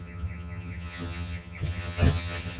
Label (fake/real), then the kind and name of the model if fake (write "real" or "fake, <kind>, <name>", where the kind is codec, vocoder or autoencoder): fake, vocoder, HiFi-GAN